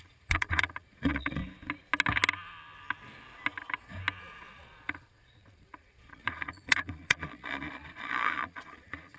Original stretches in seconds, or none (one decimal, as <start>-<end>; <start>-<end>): 1.4-4.2